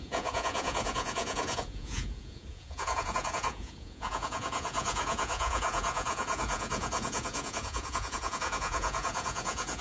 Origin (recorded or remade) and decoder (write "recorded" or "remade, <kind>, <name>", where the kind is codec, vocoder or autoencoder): remade, vocoder, Vocos